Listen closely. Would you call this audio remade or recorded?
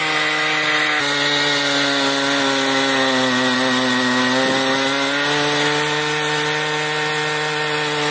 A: recorded